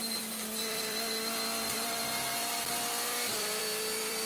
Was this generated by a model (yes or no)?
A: yes